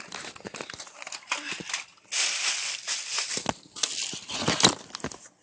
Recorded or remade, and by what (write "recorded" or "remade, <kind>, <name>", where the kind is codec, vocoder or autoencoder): recorded